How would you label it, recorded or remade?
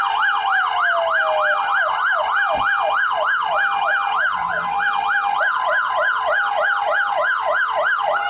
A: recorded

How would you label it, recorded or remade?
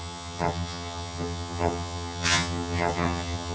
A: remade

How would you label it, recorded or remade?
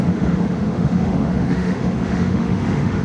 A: remade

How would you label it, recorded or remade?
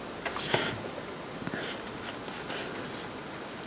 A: recorded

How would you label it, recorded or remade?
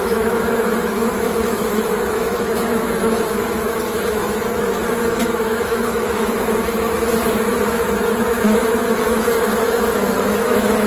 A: remade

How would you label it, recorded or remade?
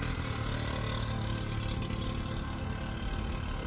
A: recorded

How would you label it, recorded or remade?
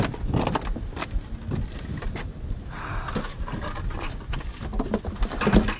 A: recorded